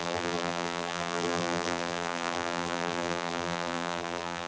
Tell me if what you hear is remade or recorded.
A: remade